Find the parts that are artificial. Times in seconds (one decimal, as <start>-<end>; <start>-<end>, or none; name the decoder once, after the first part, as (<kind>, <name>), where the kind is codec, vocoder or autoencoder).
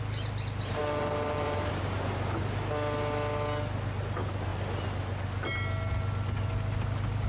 0.8-1.7 (vocoder, BigVGAN v2)